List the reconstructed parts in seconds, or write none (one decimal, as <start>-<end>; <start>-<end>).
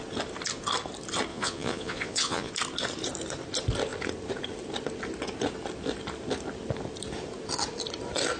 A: 1.3-2.5